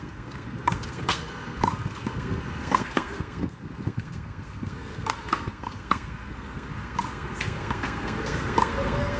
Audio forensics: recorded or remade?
remade